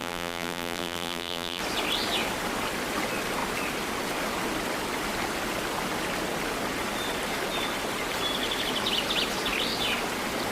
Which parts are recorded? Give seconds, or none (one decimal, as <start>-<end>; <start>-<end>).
1.6-10.5